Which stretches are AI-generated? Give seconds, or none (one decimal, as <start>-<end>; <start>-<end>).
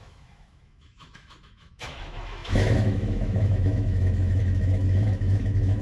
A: 0.0-5.8